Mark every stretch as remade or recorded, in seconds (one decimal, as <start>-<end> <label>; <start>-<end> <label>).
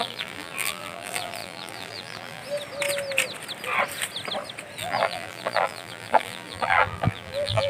0.0-2.4 remade; 2.4-4.8 recorded; 4.8-7.7 remade